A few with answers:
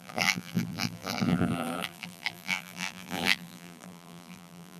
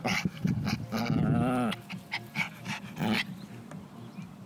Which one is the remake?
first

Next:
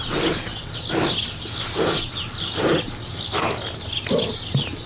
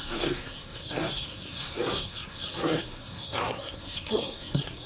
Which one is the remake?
second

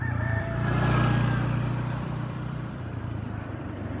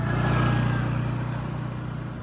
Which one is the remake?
first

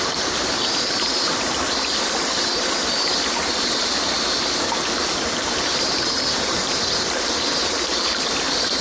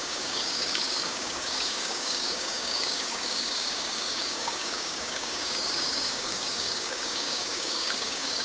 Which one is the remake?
second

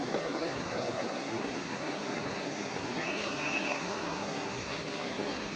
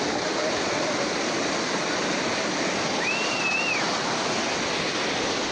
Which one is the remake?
first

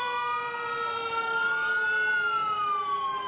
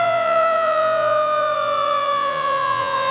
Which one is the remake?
second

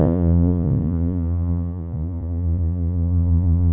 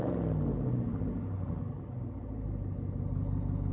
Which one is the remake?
first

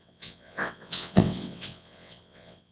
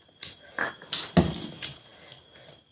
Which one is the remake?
first